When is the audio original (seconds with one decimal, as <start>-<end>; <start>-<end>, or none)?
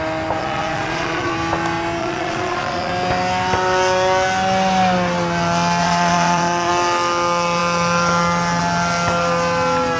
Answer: 0.0-0.4; 1.3-2.0; 2.9-5.8; 6.7-10.0